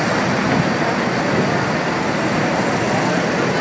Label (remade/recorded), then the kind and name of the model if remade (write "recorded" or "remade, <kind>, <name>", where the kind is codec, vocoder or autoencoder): recorded